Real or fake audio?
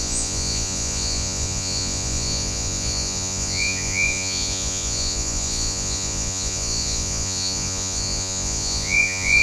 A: fake